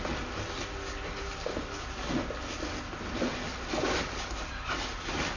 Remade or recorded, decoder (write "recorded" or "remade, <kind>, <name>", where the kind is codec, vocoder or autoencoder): recorded